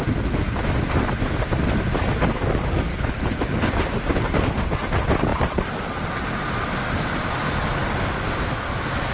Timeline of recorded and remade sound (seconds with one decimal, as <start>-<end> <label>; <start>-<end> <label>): 0.0-2.9 recorded; 2.9-3.7 remade; 3.7-9.1 recorded